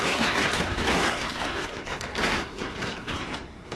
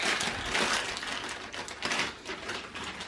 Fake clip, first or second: first